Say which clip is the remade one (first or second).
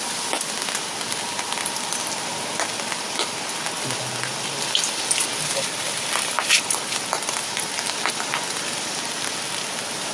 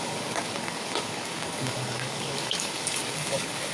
second